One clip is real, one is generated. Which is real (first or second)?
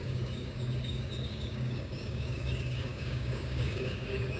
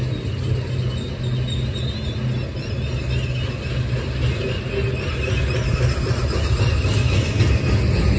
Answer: second